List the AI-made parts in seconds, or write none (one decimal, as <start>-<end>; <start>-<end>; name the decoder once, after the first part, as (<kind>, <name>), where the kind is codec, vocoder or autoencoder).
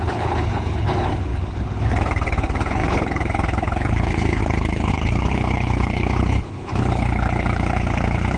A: 0.0-8.4 (codec, HILCodec)